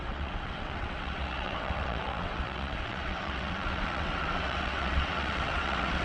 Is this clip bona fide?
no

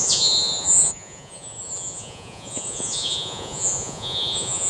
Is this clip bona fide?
no